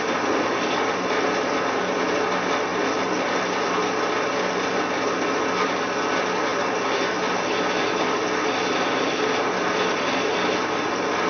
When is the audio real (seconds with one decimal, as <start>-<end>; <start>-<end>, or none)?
0.0-11.3